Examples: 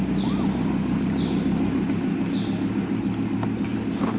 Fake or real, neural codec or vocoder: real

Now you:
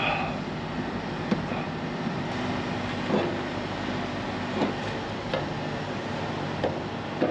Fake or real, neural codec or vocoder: real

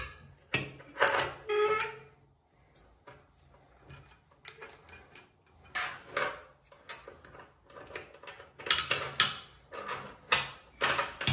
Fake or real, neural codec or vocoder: real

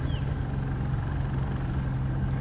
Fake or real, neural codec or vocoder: real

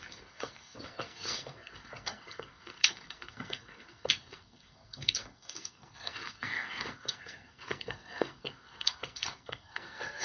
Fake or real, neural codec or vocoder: fake, codec, SNAC